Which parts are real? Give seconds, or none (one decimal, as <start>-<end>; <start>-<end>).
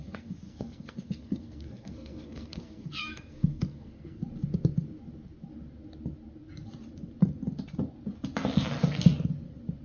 4.2-9.8